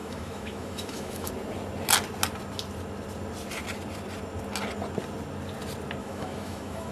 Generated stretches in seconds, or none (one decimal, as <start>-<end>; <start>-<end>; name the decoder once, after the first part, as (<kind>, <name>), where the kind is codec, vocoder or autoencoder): 0.0-1.3 (autoencoder, DAC-VAE); 6.0-6.9